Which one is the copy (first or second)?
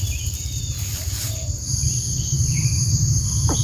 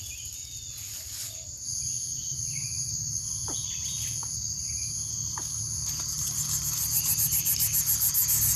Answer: first